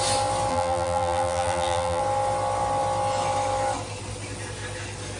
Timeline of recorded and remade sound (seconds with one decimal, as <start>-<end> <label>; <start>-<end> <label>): 0.0-0.5 recorded; 0.5-2.0 remade; 2.0-5.2 recorded